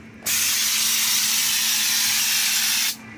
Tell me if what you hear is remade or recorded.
recorded